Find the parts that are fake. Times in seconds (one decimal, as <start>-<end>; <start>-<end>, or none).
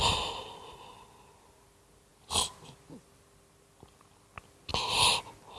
none